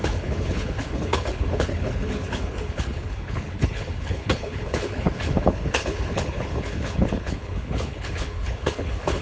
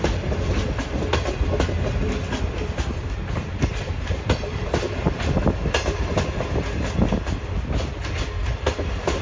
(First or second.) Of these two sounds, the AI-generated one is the first